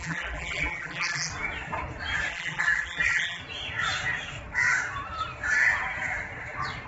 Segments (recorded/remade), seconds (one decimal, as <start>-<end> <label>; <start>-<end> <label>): 0.0-1.3 remade; 1.3-2.3 recorded; 2.3-3.4 remade; 3.4-6.9 recorded